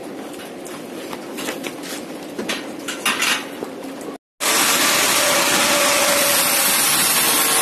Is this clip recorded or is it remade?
recorded